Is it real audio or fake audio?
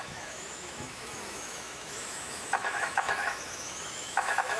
fake